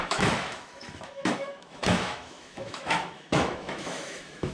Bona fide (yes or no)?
no